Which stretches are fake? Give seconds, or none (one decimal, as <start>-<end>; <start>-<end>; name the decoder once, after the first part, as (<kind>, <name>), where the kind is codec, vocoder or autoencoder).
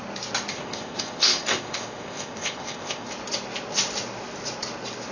0.5-3.1 (codec, ZipCodec)